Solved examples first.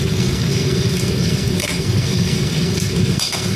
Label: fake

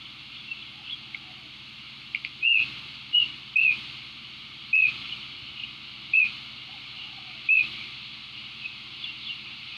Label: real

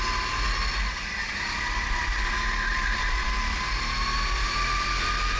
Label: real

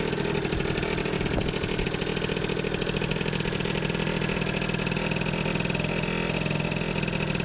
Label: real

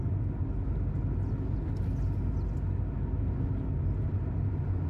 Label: real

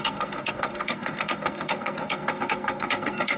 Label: fake